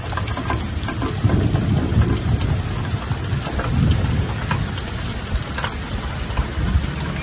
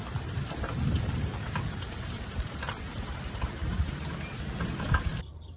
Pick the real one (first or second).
first